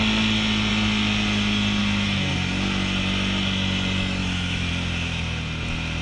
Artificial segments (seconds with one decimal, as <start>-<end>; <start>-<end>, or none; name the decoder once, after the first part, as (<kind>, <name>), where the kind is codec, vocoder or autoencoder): 1.8-2.3 (autoencoder, DAC-VAE); 4.2-4.7